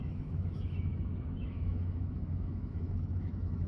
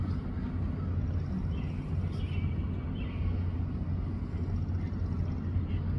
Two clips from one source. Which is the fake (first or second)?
first